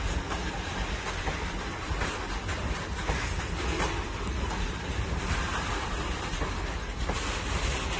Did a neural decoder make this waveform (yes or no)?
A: no